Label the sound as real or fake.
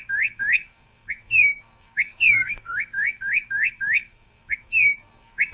fake